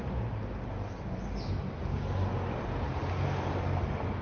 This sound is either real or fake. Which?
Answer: real